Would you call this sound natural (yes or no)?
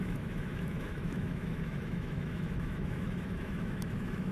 no